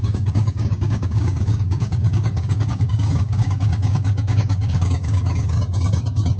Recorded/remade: remade